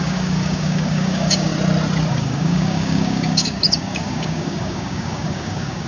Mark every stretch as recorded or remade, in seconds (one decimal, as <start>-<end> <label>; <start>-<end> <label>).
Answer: 0.0-1.5 remade; 1.5-2.1 recorded; 2.1-5.9 remade